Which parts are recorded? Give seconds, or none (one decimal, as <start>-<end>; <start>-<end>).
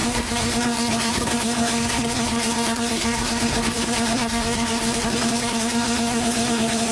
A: none